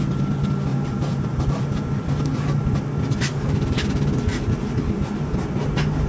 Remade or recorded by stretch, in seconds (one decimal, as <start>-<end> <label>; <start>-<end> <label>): 0.0-0.7 recorded; 0.7-1.4 remade; 1.4-6.1 recorded